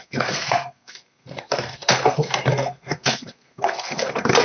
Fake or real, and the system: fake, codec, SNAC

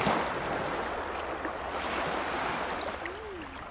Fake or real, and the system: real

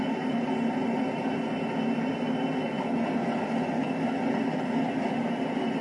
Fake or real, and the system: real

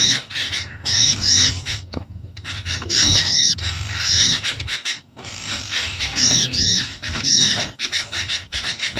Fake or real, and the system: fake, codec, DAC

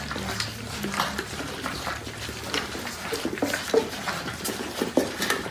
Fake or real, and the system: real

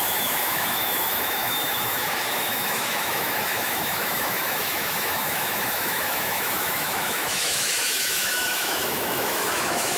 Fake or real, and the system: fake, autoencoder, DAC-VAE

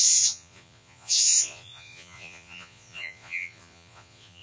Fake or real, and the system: fake, vocoder, Vocos